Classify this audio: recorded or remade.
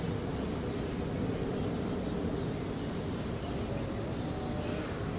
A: recorded